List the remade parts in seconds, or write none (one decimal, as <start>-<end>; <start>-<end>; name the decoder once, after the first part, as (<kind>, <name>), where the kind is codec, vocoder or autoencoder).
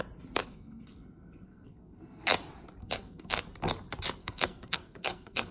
0.4-2.2 (codec, SNAC); 2.8-3.4; 4.2-5.5